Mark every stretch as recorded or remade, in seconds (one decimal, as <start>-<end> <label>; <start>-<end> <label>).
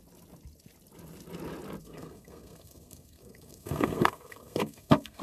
0.0-1.8 recorded; 1.8-5.2 remade